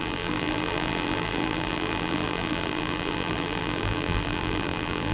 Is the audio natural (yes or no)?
no